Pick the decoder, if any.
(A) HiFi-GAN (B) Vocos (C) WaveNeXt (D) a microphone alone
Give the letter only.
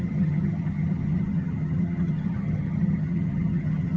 A